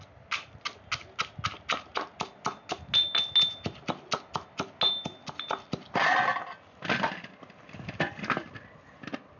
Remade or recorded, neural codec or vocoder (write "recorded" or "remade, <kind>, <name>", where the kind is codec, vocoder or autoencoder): recorded